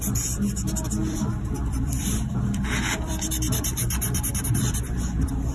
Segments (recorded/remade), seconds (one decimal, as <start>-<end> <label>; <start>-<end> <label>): 0.0-1.0 recorded; 1.0-4.3 remade; 4.3-5.5 recorded